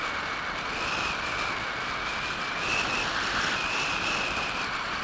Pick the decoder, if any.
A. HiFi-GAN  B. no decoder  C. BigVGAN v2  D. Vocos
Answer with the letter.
B